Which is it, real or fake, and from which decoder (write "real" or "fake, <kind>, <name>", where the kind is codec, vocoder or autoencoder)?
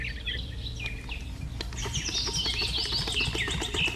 real